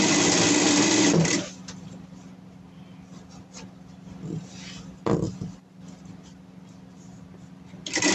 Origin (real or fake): real